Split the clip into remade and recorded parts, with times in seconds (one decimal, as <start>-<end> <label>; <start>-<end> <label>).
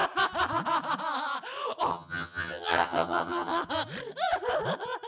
0.0-1.9 recorded; 1.9-3.6 remade; 3.6-5.1 recorded